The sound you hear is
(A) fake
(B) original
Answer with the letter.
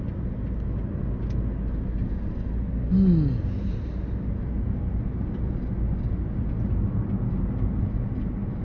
B